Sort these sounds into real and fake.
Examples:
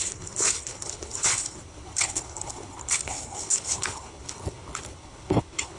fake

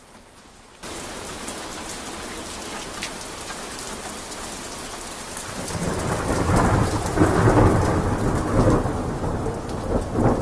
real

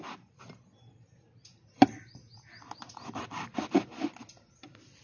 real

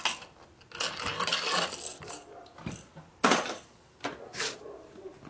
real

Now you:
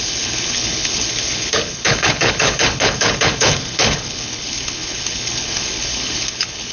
fake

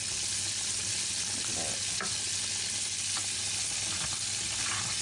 real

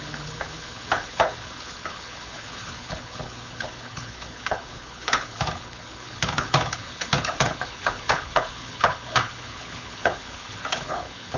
fake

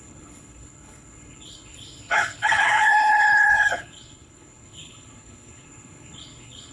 fake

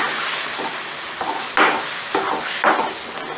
real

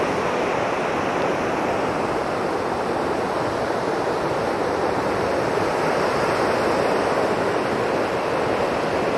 real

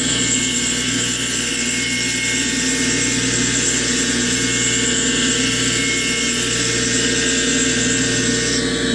real